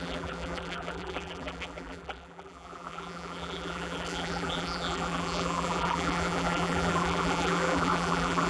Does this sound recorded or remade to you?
remade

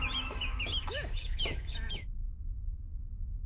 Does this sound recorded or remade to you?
remade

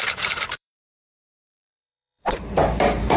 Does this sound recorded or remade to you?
remade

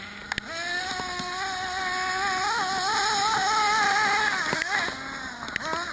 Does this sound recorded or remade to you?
recorded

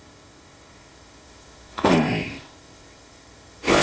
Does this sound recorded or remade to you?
remade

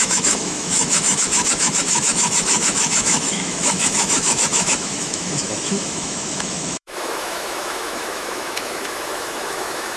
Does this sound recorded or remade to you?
remade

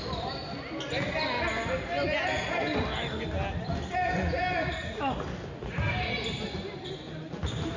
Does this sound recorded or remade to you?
recorded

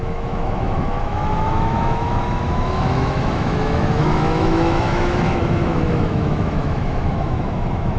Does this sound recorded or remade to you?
remade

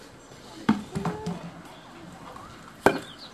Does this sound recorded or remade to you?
recorded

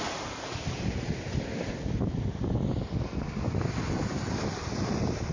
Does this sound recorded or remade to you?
recorded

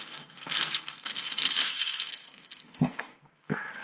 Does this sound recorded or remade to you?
remade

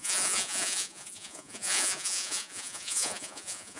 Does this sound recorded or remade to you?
remade